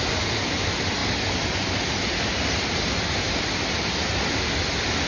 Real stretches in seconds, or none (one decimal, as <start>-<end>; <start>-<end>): 0.0-5.1